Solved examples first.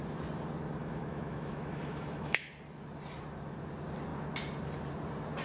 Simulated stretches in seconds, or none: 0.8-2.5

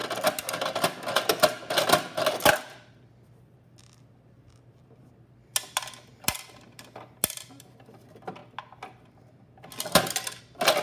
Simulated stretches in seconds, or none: none

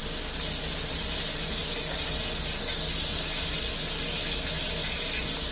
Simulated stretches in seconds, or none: none

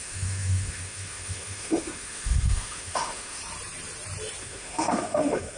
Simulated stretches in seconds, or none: 0.0-3.4; 4.4-5.6